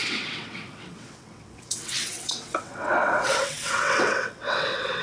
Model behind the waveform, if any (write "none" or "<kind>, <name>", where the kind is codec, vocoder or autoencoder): vocoder, WaveNeXt